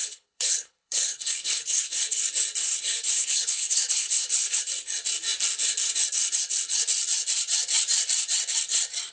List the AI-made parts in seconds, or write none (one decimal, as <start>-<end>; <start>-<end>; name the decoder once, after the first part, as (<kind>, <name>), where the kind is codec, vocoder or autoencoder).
0.0-2.2 (codec, HILCodec); 2.6-4.6